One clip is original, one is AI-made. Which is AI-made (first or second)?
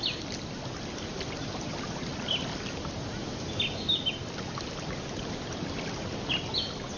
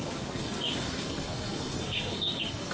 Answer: second